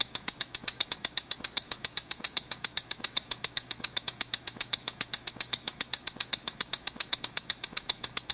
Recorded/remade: remade